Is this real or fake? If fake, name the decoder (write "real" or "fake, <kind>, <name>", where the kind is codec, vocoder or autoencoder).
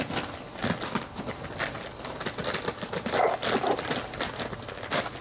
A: real